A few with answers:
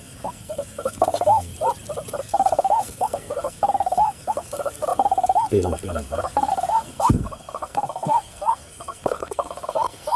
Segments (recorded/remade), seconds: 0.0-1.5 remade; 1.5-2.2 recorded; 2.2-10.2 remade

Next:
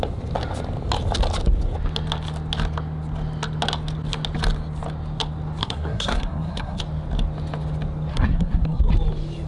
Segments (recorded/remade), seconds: 0.0-5.6 recorded; 5.6-6.8 remade; 6.8-8.1 recorded; 8.1-8.8 remade; 8.8-9.5 recorded

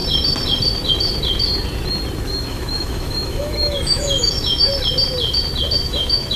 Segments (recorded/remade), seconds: 0.0-2.5 recorded; 2.5-4.7 remade; 4.7-5.9 recorded; 5.9-6.4 remade